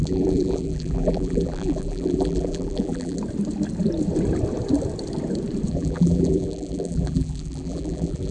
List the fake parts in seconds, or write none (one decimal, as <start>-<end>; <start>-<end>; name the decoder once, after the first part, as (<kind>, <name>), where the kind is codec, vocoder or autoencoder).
0.0-3.2 (vocoder, BigVGAN v2); 5.7-8.3